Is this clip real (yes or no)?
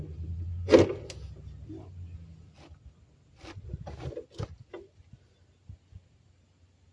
yes